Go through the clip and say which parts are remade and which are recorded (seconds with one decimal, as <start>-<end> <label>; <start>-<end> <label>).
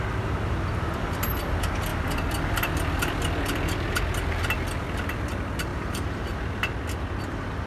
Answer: 0.0-5.7 recorded; 5.7-6.3 remade; 6.3-7.7 recorded